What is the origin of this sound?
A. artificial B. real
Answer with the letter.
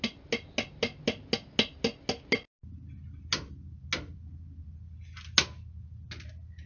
B